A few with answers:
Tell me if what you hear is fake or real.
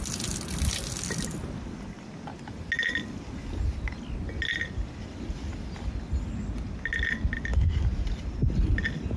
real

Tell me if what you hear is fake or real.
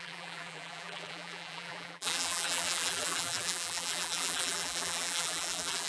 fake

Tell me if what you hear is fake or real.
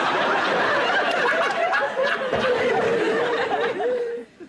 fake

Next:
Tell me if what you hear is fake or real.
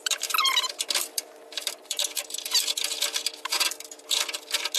fake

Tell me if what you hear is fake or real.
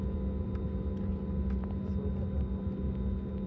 real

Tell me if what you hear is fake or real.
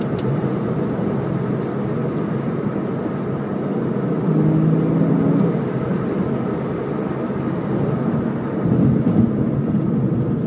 real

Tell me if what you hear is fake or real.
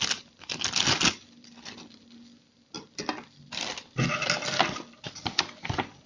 real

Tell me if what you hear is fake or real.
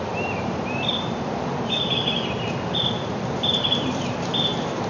fake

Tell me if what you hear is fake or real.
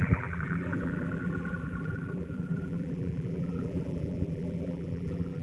fake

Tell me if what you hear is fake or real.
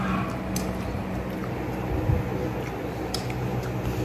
real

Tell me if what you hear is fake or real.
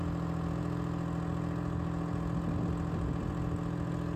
real